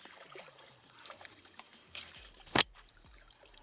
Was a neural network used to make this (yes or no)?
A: yes